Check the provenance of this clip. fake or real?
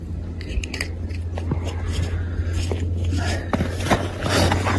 real